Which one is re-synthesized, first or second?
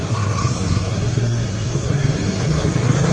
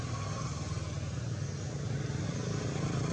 first